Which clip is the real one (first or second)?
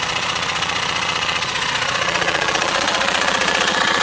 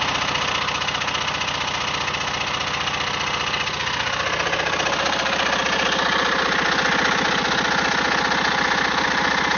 second